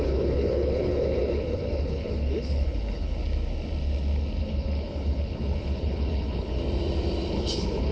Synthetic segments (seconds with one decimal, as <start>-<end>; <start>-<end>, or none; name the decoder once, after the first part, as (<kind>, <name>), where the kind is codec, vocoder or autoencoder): 0.0-3.2 (codec, HILCodec); 4.4-6.6; 7.3-7.9